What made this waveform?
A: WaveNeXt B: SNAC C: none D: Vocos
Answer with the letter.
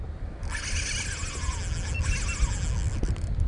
C